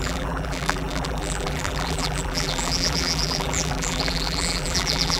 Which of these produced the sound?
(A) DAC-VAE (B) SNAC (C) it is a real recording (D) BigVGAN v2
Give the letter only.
D